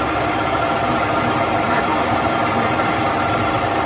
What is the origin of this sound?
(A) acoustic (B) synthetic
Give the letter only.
B